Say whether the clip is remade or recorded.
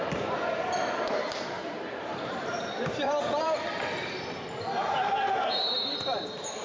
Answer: remade